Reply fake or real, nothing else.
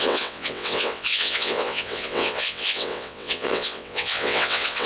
fake